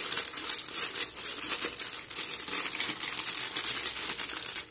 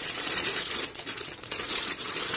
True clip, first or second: first